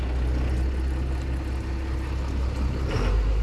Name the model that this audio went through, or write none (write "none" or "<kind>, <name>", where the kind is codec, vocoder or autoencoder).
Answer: none